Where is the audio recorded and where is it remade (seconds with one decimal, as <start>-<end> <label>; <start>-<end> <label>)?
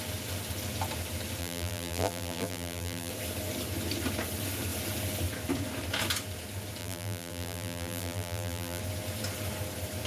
0.0-1.4 recorded; 1.4-3.1 remade; 3.1-6.8 recorded; 6.8-8.8 remade; 8.8-10.1 recorded